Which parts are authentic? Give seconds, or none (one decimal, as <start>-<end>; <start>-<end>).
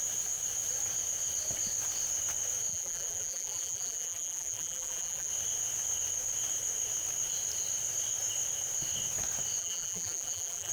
0.0-2.7; 5.3-9.6